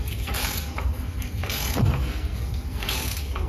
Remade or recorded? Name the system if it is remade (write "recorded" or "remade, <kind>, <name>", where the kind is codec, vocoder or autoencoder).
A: remade, codec, SNAC